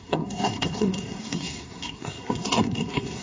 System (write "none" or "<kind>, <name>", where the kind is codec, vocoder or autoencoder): codec, SNAC